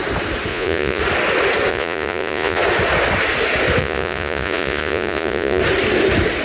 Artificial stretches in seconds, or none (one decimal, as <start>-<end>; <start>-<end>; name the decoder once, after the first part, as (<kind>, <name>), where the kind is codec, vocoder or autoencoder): 0.5-1.0 (vocoder, Vocos); 1.7-2.6; 3.8-5.6